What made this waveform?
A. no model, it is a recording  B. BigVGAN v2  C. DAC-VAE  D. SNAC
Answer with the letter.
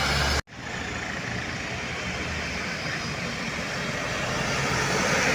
A